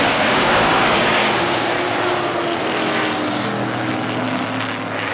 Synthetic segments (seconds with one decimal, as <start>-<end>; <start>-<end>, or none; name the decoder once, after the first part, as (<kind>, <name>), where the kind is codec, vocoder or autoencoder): 0.0-1.7 (codec, DAC)